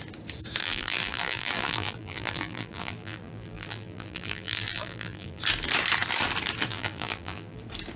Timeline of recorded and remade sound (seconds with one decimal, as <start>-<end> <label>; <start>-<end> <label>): 0.0-0.6 recorded; 0.6-5.4 remade; 5.4-6.7 recorded; 6.7-7.6 remade; 7.6-8.0 recorded